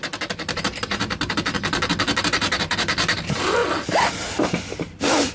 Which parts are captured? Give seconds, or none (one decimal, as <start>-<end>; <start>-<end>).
0.0-5.3